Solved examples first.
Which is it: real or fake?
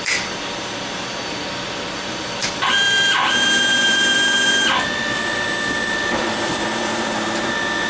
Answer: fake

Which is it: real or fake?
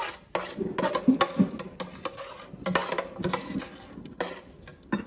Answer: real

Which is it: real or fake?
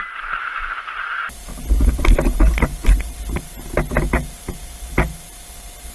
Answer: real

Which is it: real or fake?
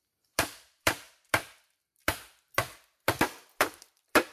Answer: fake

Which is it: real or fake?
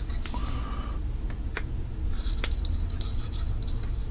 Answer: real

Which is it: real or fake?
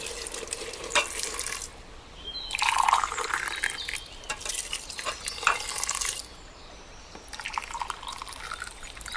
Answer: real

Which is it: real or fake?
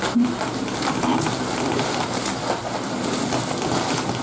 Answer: real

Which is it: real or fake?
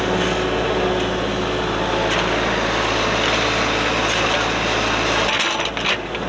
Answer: real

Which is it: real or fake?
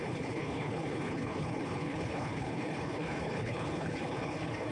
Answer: fake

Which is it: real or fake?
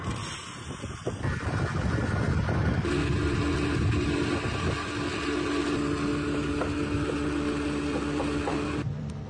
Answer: real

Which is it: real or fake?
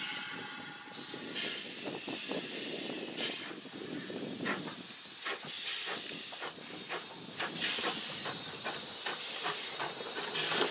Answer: fake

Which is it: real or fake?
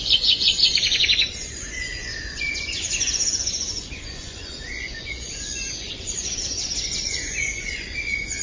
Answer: fake